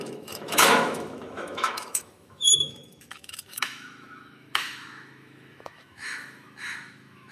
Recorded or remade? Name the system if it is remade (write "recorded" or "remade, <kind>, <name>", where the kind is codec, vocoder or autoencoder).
remade, autoencoder, DAC-VAE